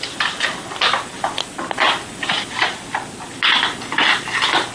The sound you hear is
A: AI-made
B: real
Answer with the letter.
B